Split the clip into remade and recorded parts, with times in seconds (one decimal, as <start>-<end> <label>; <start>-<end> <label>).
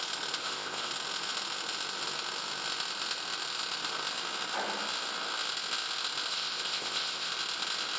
0.0-0.4 recorded; 0.4-0.9 remade; 0.9-6.3 recorded; 6.3-7.3 remade; 7.3-8.0 recorded